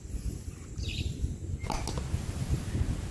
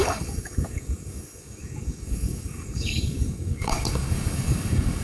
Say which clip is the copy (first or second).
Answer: second